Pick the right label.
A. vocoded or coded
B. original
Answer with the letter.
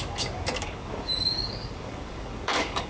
A